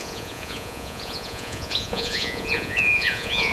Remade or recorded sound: remade